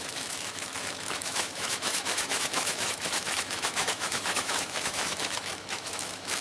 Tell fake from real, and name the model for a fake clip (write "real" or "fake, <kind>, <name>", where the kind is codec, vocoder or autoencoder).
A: fake, autoencoder, DAC-VAE